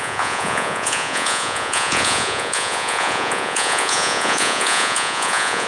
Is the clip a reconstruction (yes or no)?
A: yes